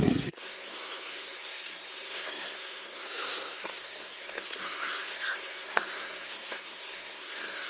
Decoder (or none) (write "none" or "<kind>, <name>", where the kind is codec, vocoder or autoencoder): codec, SNAC